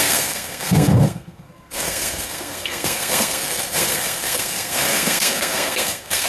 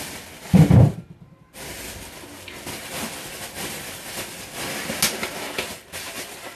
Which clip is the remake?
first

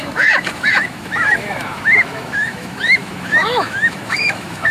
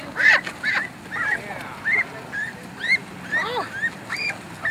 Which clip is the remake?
first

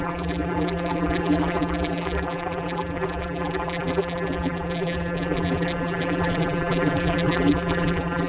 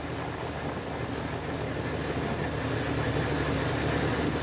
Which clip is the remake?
first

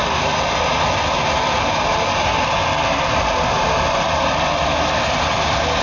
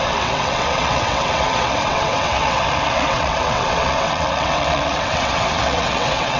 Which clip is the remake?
second